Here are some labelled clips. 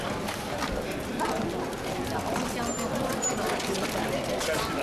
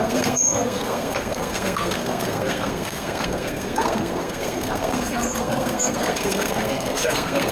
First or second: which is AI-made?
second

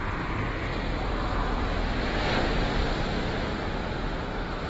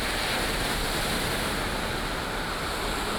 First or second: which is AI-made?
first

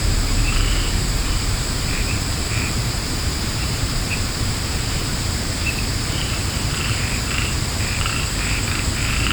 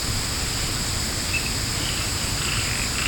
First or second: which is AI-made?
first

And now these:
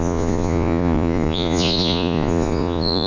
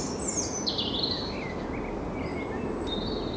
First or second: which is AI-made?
first